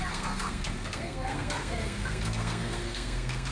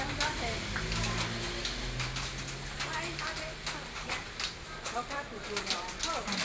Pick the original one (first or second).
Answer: second